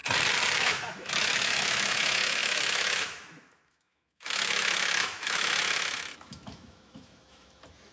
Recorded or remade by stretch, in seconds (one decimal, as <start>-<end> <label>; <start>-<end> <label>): 0.0-0.6 recorded; 0.6-7.9 remade

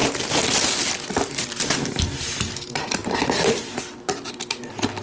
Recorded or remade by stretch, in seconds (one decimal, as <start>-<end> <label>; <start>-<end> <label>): 0.0-5.0 recorded

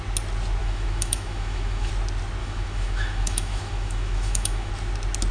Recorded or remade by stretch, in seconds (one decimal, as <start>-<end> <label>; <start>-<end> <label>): 0.0-0.6 recorded; 0.6-1.9 remade; 1.9-2.4 recorded; 2.4-4.7 remade; 4.7-5.3 recorded

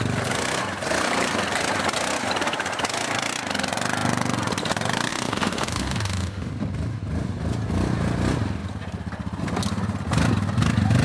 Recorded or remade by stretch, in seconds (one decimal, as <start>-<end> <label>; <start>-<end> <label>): 0.0-5.1 recorded; 5.1-6.5 remade; 6.5-11.0 recorded

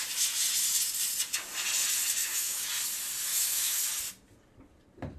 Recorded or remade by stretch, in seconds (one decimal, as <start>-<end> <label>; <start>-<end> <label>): 0.0-2.2 recorded; 2.2-2.7 remade; 2.7-3.3 recorded; 3.3-3.8 remade; 3.8-5.2 recorded

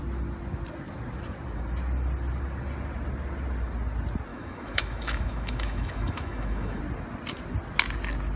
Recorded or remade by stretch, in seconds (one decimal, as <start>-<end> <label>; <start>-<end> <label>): 0.0-4.3 recorded; 4.3-6.8 remade; 6.8-8.4 recorded